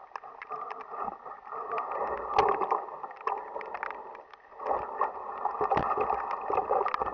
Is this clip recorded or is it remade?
recorded